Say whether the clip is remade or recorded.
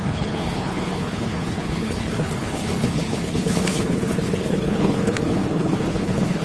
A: remade